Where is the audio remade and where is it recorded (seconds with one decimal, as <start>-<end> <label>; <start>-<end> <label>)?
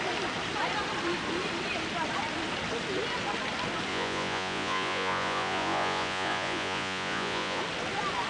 0.0-3.9 recorded; 3.9-7.6 remade; 7.6-8.3 recorded